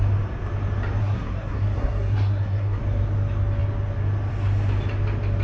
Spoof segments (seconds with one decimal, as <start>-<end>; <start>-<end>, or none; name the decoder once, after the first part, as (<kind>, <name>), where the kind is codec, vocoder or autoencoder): 1.0-2.8 (codec, SNAC)

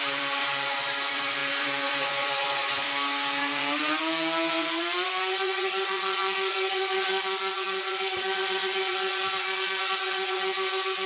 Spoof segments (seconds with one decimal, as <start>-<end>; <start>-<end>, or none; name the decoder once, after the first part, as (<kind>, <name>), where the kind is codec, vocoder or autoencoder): 0.0-11.1 (vocoder, Vocos)

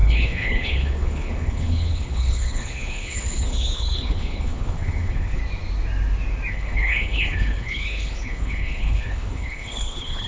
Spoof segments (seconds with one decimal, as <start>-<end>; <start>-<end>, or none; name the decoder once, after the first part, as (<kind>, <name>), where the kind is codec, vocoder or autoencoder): 0.0-5.4 (codec, HILCodec); 6.5-10.3

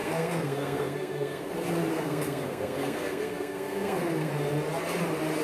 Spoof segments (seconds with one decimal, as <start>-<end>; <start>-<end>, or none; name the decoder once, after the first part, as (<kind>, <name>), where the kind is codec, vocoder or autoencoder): 0.0-1.5 (codec, SNAC); 1.9-4.3

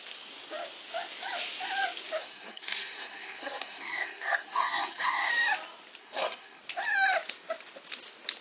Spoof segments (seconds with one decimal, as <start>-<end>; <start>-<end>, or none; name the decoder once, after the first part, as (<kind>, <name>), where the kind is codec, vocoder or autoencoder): 2.2-5.3 (codec, SNAC); 6.0-6.6

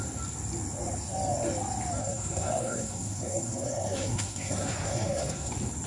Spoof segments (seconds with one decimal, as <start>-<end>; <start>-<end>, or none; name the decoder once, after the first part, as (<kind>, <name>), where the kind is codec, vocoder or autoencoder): 2.0-5.5 (codec, SNAC)

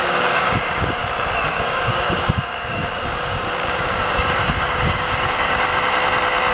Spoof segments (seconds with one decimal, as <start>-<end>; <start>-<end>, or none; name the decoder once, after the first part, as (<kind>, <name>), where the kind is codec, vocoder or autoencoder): 0.0-1.0 (codec, DAC); 1.5-5.7